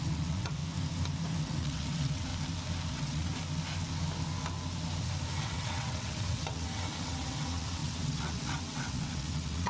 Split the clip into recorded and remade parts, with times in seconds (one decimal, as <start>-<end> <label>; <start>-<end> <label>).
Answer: 0.0-0.6 remade; 0.6-1.4 recorded; 1.4-2.3 remade; 2.3-2.9 recorded; 2.9-3.3 remade; 3.3-5.4 recorded; 5.4-9.7 remade